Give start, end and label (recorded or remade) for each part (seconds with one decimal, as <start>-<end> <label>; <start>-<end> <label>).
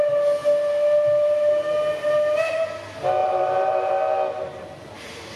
0.0-3.2 recorded; 3.2-3.9 remade; 3.9-5.4 recorded